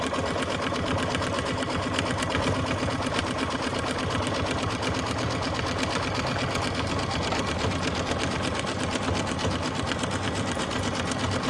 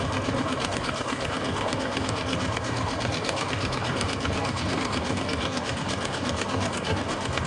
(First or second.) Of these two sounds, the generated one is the second